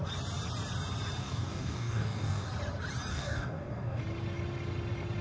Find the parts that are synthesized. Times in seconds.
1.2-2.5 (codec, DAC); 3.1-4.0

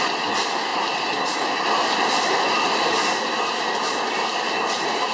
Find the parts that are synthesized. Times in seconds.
none

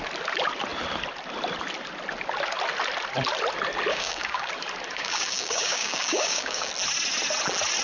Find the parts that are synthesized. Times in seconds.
3.9-4.5 (codec, DAC); 4.9-6.7

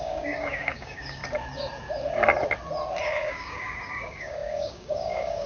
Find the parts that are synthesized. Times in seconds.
0.0-1.2 (codec, DAC); 3.0-5.5

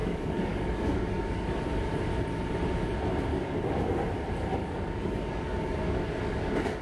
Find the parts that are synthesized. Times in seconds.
0.0-1.6 (codec, DAC); 3.3-4.0; 4.6-6.8

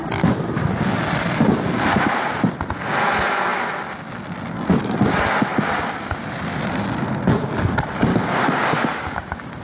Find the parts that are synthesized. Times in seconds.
8.1-9.6 (codec, DAC)

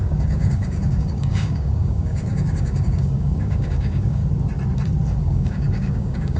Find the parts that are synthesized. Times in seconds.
0.0-4.2 (codec, DAC); 5.2-6.4

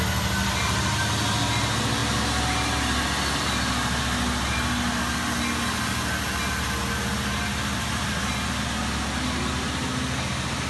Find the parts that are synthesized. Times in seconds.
none